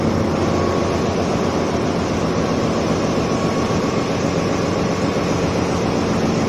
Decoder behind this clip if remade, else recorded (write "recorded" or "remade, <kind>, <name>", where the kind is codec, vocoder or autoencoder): recorded